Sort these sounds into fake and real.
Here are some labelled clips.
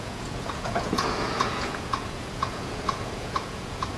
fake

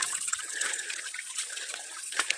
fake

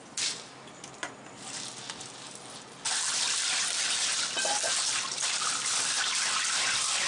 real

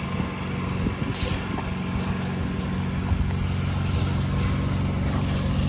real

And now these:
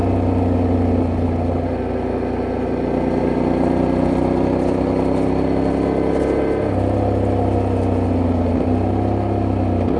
real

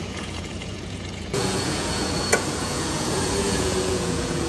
fake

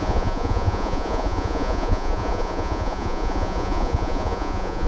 fake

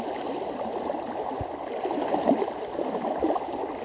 real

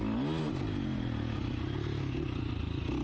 real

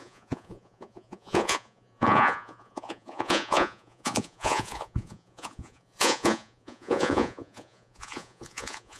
fake